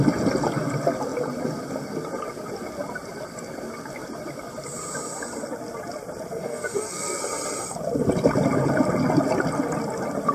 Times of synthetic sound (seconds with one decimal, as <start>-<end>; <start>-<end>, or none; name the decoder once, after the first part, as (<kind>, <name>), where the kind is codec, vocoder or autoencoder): 6.3-7.2 (codec, SNAC)